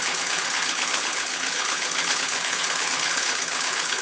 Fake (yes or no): yes